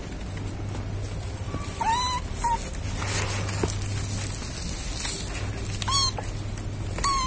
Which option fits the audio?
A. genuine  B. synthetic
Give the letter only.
A